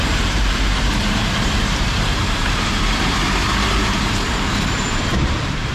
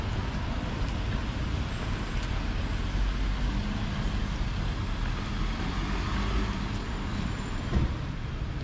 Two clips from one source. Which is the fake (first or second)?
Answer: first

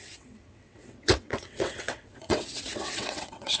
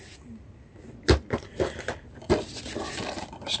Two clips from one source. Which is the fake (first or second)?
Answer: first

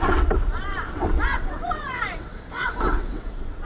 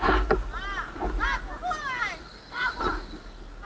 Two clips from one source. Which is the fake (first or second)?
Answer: first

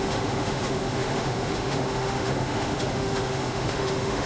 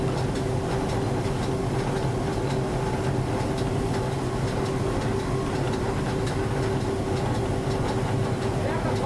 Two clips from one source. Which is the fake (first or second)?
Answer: first